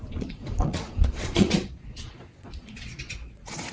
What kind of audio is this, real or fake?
fake